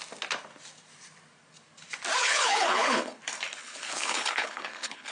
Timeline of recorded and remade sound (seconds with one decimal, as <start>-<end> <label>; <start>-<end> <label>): 0.0-2.2 recorded; 2.2-3.2 remade; 3.2-3.6 recorded; 3.6-5.1 remade